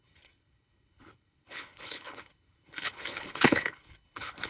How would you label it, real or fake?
fake